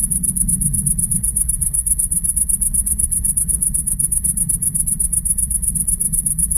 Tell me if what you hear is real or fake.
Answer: fake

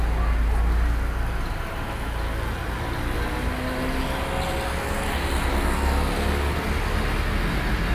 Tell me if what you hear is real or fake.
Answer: real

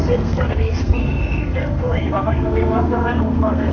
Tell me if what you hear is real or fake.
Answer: fake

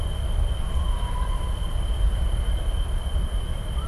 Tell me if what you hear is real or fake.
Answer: real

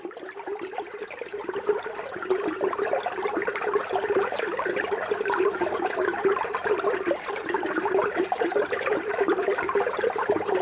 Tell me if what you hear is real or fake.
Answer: real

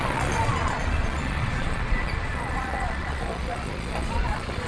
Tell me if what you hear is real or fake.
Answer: fake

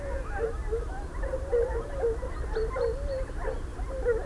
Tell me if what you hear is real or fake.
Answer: real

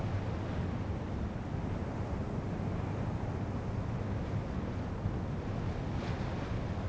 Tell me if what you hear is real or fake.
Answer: real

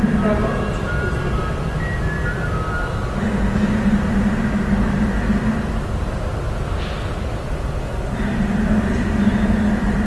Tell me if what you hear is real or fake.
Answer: real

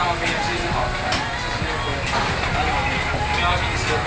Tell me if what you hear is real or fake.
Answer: real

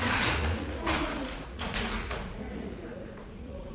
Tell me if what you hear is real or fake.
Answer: fake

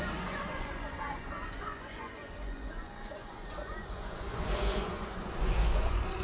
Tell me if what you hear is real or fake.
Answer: fake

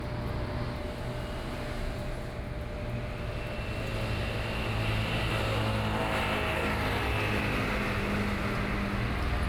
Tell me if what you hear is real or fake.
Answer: real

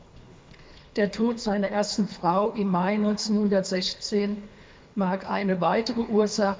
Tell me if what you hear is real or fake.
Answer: fake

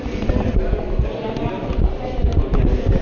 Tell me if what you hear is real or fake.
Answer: real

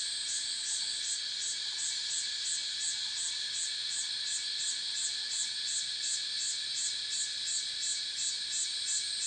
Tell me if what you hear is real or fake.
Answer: real